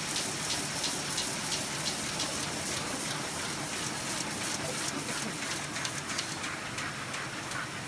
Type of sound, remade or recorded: recorded